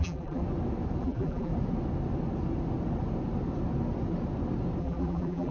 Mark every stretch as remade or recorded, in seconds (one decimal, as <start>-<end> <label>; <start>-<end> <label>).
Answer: 0.0-0.4 remade; 0.4-1.0 recorded; 1.0-1.5 remade; 1.5-4.8 recorded; 4.8-5.5 remade